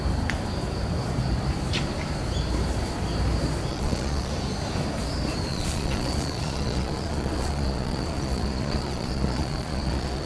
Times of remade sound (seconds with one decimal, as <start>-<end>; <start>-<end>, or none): 3.7-4.3; 5.5-10.3